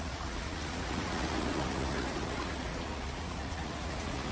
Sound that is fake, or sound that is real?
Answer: fake